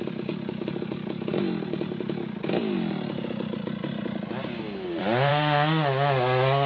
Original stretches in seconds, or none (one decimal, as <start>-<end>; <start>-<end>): 0.0-6.7